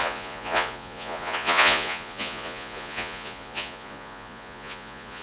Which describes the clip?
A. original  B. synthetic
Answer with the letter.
B